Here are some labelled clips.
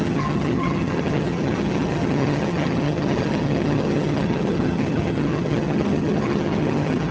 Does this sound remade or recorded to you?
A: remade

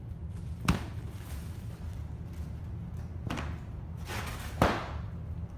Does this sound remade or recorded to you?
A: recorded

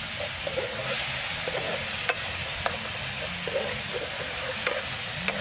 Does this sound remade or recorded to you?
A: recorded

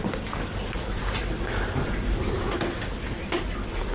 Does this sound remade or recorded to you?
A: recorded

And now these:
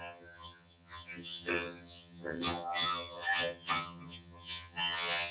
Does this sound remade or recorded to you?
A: remade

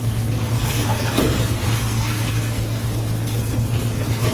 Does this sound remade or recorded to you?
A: remade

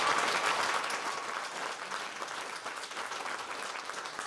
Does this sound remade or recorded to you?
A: recorded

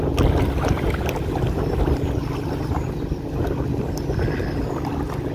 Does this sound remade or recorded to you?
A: recorded